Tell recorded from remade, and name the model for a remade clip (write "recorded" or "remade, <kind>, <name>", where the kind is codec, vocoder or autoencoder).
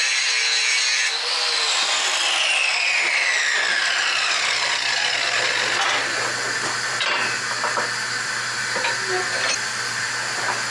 recorded